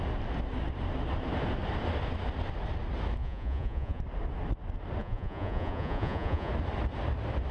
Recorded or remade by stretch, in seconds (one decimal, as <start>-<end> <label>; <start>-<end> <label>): 0.0-3.2 recorded; 3.2-4.0 remade; 4.0-5.0 recorded; 5.0-6.5 remade; 6.5-7.5 recorded